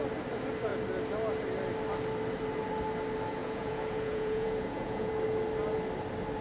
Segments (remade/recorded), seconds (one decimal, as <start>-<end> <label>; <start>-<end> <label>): 0.0-3.4 recorded; 3.4-5.1 remade; 5.1-6.4 recorded